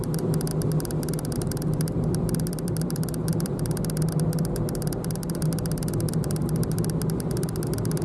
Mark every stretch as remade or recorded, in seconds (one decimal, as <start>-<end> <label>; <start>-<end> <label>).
0.0-8.0 recorded